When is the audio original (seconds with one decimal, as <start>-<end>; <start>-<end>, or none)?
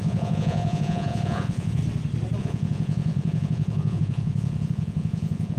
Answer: 1.8-2.4